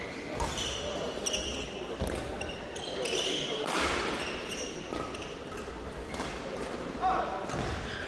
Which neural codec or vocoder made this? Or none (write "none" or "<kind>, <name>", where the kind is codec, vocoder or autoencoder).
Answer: none